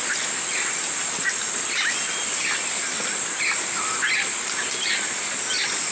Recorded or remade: recorded